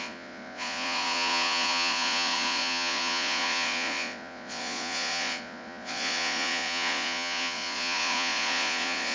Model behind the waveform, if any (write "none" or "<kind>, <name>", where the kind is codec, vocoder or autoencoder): vocoder, Vocos